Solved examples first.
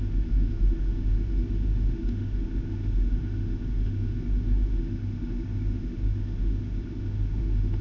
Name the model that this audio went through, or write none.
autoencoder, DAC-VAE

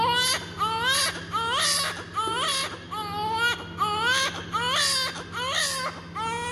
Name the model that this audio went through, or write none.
none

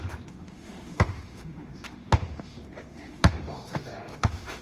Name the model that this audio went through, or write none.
autoencoder, DAC-VAE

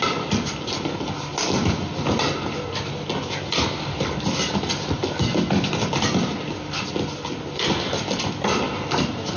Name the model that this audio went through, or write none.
none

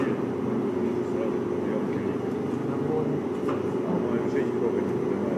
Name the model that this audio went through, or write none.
none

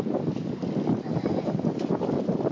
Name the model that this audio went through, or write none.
none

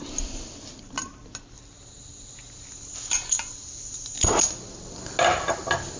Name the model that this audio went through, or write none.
none